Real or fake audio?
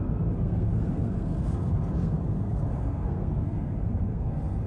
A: fake